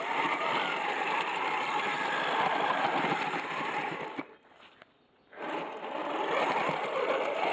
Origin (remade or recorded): recorded